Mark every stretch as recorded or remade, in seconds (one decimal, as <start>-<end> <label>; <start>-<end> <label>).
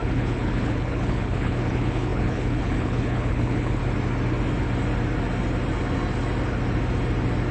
0.0-3.8 remade; 3.8-7.5 recorded